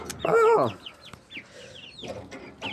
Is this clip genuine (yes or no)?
yes